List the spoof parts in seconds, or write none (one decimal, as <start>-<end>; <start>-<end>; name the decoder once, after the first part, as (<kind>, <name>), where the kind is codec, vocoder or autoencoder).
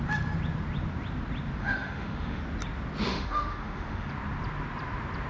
1.6-2.4 (autoencoder, DAC-VAE); 3.1-4.1